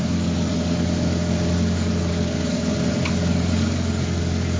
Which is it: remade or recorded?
remade